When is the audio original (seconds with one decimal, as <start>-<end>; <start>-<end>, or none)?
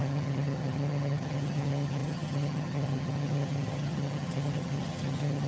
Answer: none